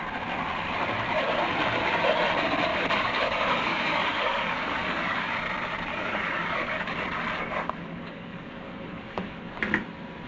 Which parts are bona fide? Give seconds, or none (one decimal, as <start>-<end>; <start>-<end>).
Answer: 0.0-2.7; 5.2-5.9; 6.8-7.4; 9.6-10.3